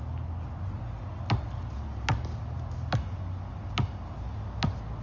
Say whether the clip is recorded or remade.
recorded